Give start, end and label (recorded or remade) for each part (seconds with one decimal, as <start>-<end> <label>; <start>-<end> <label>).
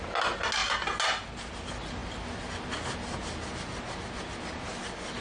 0.0-5.2 recorded